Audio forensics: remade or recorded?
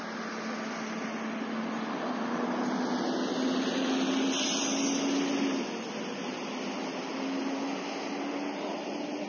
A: recorded